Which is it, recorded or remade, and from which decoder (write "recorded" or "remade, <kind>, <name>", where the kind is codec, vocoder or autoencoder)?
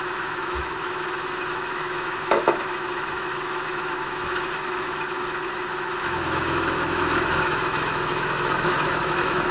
remade, autoencoder, DAC-VAE